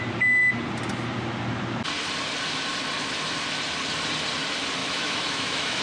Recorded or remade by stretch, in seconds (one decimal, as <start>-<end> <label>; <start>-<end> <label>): 0.0-4.8 recorded; 4.8-5.8 remade